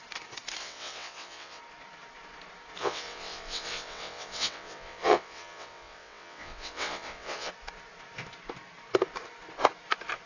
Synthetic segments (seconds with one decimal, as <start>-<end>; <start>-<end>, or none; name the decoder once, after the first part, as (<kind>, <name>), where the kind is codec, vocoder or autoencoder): 0.6-1.6 (vocoder, WaveNeXt); 2.8-7.5